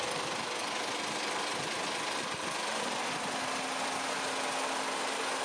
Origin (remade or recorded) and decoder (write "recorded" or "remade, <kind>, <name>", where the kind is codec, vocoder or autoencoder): recorded